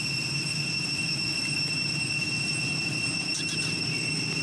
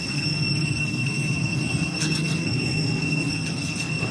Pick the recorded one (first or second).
first